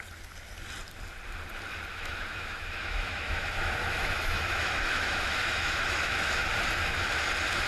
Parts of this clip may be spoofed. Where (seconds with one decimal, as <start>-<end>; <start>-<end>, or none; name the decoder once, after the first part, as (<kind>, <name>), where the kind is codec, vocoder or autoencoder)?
1.9-6.5 (autoencoder, DAC-VAE)